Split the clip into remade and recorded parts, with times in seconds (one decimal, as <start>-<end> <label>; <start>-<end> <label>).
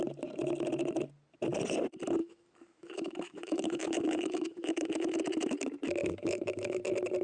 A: 0.0-2.2 recorded; 2.2-5.2 remade; 5.2-6.0 recorded; 6.0-6.8 remade; 6.8-7.2 recorded